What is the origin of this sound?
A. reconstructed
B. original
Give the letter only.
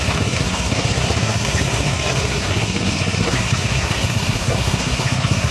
A